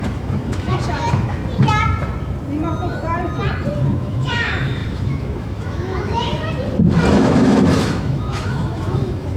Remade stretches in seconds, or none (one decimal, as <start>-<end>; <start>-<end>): 0.0-1.4; 3.9-6.3; 7.1-9.4